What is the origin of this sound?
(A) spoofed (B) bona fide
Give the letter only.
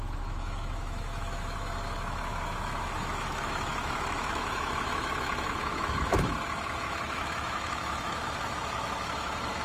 A